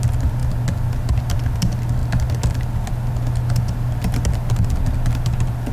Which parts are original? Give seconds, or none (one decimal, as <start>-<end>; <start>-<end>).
0.0-5.7

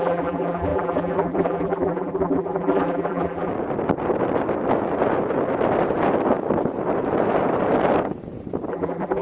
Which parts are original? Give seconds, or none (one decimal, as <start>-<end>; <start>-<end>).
3.5-8.7